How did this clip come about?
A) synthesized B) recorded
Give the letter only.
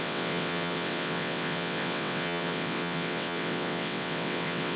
A